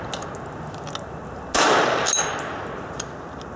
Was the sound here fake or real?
real